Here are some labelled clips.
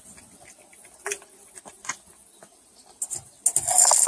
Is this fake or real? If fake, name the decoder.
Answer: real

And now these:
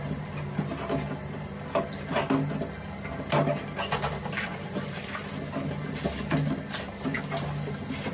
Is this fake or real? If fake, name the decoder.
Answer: real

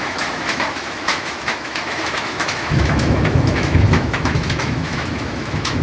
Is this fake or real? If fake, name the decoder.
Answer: fake, autoencoder, DAC-VAE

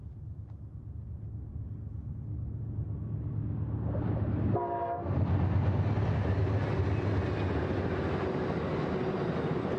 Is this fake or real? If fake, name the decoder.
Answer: real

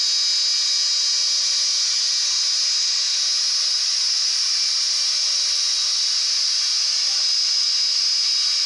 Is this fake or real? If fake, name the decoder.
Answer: real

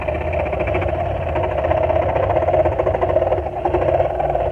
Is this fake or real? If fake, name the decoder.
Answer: real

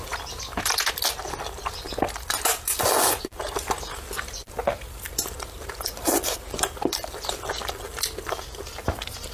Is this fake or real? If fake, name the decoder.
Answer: real